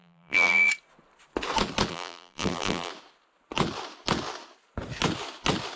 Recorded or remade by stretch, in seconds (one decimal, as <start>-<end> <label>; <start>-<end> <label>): 0.0-0.7 remade; 0.7-1.9 recorded; 1.9-2.9 remade; 2.9-5.8 recorded